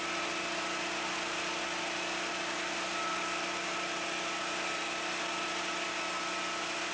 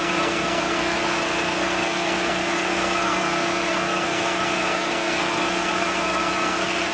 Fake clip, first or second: second